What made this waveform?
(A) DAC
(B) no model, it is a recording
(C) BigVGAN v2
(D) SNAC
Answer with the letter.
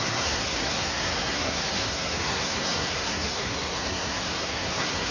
D